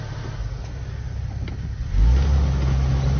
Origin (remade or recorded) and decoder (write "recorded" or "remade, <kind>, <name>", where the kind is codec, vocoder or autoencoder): recorded